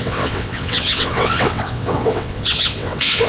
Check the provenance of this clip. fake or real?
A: fake